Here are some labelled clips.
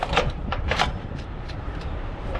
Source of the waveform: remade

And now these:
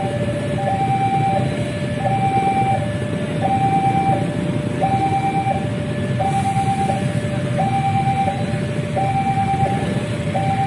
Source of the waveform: recorded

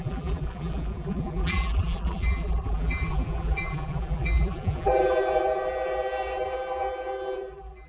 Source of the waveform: remade